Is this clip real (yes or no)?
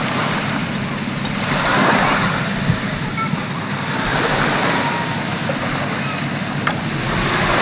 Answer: yes